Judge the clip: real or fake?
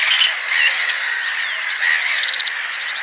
real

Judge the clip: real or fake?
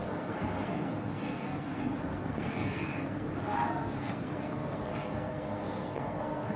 fake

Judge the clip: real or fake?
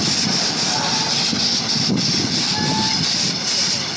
real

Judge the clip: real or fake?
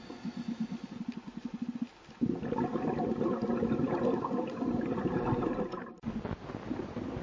real